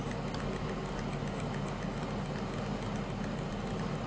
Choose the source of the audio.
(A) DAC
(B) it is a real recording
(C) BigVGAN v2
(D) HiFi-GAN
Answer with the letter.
B